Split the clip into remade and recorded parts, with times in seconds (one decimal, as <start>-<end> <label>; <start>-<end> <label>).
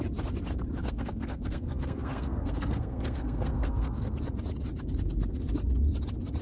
0.0-0.8 recorded; 0.8-4.1 remade; 4.1-6.4 recorded